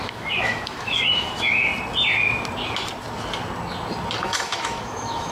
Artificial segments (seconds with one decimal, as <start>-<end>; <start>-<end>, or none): 0.0-1.7; 4.2-5.3